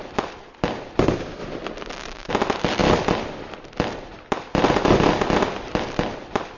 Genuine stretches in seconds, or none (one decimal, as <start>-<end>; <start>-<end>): 0.0-2.8